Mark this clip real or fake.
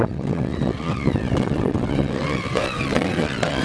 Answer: fake